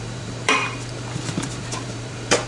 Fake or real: fake